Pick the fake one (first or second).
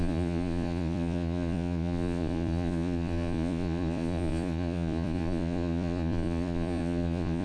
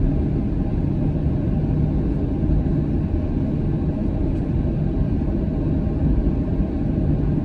first